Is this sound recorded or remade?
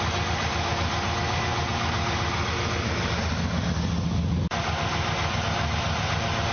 recorded